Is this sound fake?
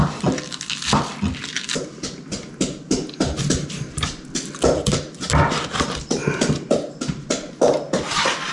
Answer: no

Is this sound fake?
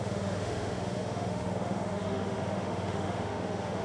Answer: yes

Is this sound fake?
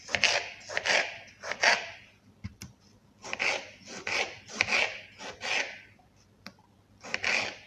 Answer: no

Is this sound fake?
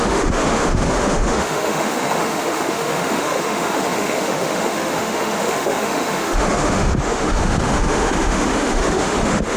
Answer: yes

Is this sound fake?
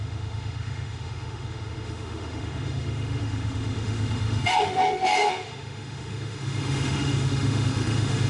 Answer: yes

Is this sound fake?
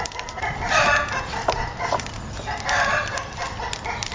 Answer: no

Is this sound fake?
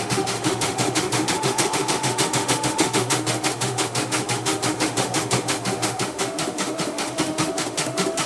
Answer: yes